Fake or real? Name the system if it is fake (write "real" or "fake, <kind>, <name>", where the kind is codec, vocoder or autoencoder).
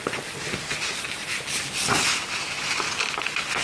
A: real